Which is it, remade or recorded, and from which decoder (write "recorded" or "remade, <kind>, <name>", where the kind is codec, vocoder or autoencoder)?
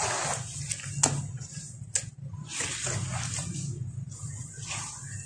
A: recorded